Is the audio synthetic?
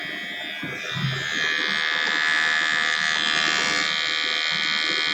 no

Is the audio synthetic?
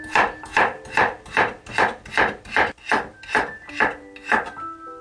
no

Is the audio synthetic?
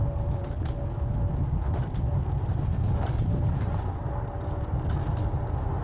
no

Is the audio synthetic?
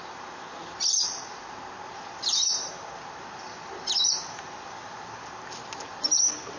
no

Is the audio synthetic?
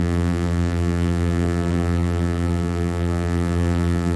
yes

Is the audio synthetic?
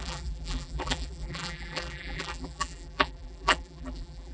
yes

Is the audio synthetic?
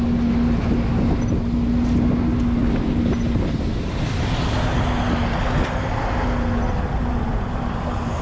no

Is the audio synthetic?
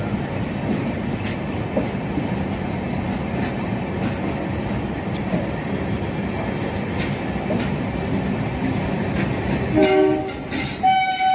no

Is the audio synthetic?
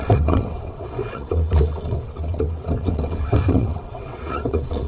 yes